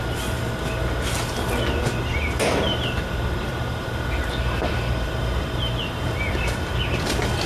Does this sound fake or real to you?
real